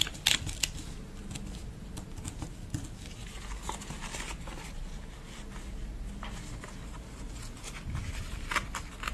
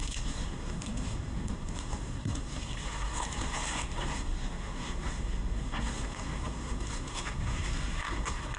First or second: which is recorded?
first